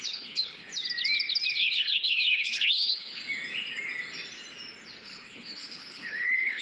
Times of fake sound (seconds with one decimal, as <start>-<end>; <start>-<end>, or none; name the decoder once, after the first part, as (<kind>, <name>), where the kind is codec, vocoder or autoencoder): 0.0-0.7 (codec, HILCodec); 1.5-3.2; 5.0-6.6